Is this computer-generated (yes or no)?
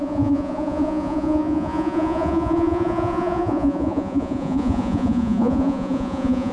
yes